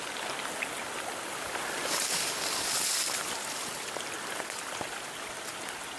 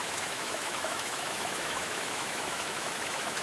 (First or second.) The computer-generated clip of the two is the second